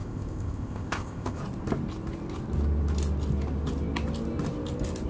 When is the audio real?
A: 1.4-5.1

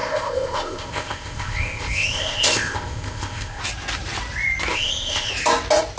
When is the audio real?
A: 3.6-4.7; 5.3-6.0